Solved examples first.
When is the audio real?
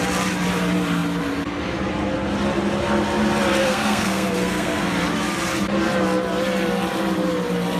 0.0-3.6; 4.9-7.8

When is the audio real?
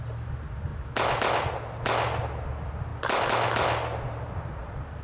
0.0-5.0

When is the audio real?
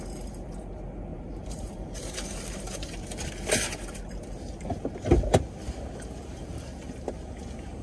0.0-1.1; 3.3-7.8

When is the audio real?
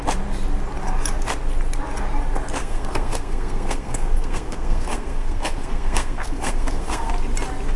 0.0-2.6; 7.1-7.8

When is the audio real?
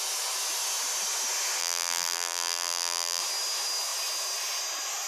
0.0-1.6; 3.2-5.1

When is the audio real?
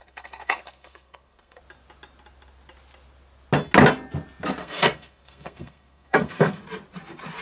1.6-4.6; 6.6-7.4